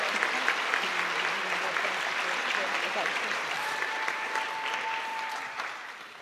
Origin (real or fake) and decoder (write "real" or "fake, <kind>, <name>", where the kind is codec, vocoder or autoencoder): fake, vocoder, BigVGAN v2